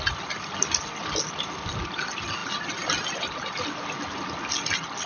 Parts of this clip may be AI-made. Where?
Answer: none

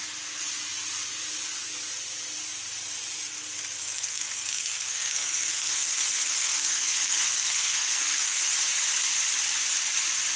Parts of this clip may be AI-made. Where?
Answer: 3.8-8.5 (codec, SNAC)

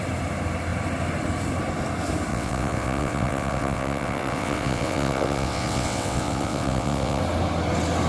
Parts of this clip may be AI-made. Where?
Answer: 2.3-7.2 (vocoder, WaveNeXt)

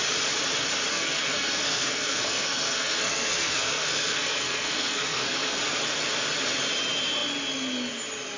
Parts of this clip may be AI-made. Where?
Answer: 0.9-5.6 (codec, SNAC)